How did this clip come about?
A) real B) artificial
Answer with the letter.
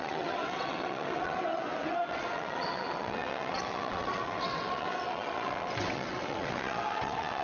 B